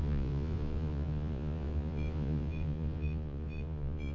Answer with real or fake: fake